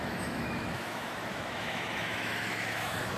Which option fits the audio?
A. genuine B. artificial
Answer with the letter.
B